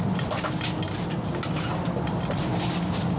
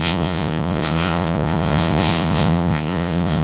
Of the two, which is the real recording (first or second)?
first